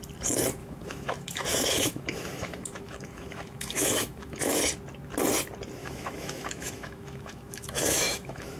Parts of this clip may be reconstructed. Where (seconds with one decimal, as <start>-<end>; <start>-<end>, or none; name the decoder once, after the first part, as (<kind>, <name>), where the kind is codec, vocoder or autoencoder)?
0.6-4.6 (autoencoder, DAC-VAE); 5.8-8.6

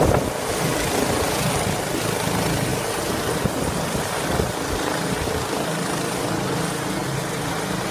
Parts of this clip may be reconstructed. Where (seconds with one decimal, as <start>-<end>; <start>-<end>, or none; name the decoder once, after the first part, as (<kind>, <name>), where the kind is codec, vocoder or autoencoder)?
none

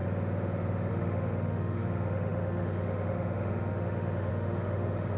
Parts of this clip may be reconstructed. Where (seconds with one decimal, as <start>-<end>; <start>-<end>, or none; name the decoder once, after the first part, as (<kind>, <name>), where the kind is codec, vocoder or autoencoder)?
0.9-5.2 (autoencoder, DAC-VAE)

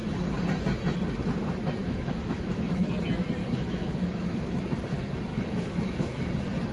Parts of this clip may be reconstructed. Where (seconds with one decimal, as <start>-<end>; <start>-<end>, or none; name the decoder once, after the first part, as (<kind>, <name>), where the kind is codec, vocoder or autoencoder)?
1.8-2.9 (autoencoder, DAC-VAE); 3.4-4.6; 5.3-6.3